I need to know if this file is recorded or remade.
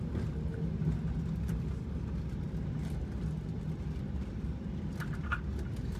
recorded